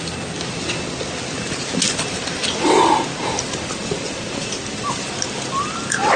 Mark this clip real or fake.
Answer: real